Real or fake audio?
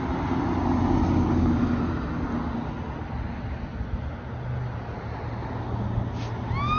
real